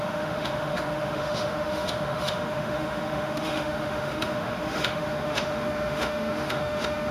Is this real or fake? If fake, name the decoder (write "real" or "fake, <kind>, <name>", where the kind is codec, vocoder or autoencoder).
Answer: fake, autoencoder, DAC-VAE